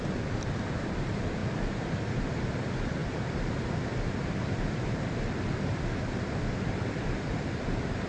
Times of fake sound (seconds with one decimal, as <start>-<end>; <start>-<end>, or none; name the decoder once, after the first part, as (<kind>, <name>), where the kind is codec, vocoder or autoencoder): none